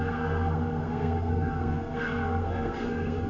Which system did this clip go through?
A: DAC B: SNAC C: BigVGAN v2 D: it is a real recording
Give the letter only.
B